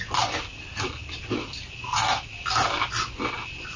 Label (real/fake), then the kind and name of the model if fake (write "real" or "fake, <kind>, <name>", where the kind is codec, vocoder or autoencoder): real